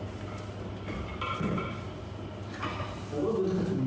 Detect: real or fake real